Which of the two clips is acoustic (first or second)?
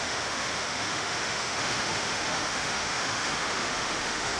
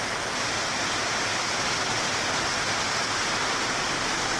second